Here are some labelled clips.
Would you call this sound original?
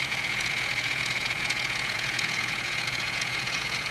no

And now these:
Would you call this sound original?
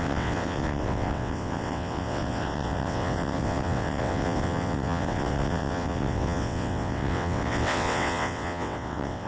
no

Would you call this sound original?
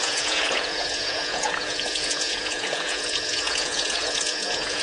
no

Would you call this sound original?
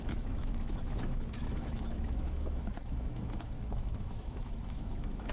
no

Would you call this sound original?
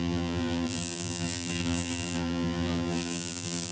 no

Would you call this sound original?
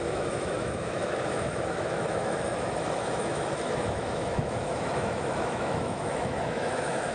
no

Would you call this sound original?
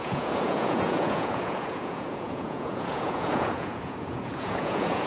no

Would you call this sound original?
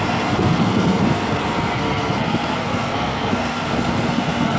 no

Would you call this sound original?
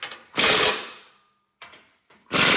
yes